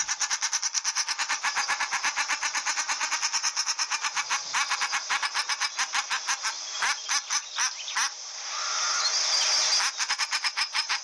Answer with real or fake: real